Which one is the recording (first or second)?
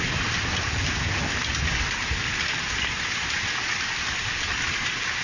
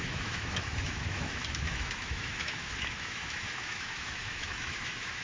first